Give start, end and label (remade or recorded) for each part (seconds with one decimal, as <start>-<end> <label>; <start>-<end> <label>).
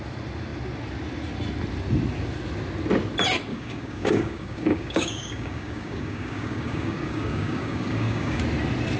0.0-3.5 recorded; 3.5-8.4 remade; 8.4-9.0 recorded